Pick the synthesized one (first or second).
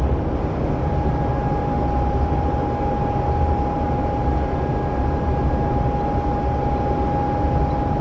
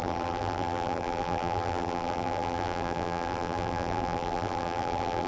second